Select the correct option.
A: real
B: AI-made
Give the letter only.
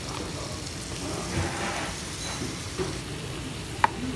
A